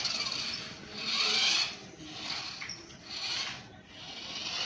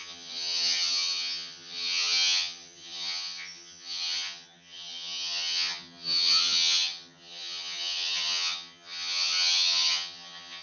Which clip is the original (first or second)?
first